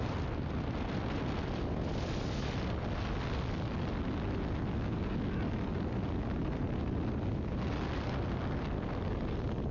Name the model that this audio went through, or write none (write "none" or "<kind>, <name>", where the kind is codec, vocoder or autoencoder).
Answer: none